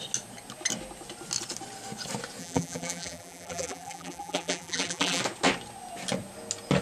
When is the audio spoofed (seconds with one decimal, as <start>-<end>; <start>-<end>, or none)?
2.4-5.2